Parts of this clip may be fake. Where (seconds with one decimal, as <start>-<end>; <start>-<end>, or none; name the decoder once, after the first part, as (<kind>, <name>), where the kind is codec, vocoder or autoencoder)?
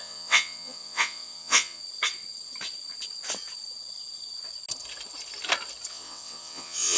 0.0-1.8 (vocoder, WaveNeXt); 5.9-7.0